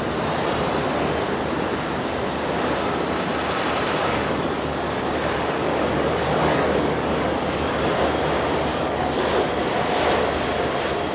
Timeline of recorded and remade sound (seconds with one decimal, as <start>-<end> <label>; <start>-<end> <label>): 0.0-4.0 recorded; 4.0-8.0 remade; 8.0-8.7 recorded; 8.7-9.3 remade; 9.3-11.1 recorded